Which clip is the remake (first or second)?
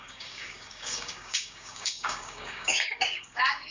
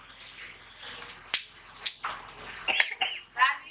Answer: first